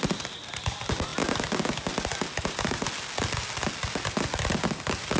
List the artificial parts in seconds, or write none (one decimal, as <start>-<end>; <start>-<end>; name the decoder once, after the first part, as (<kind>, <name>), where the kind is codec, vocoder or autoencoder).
none